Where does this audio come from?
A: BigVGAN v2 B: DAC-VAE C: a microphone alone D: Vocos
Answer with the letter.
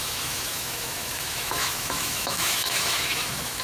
B